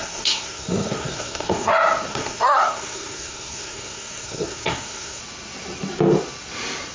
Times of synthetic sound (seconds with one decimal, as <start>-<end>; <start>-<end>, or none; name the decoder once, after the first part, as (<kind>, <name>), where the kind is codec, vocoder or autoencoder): 0.0-1.7 (codec, SNAC); 2.1-5.2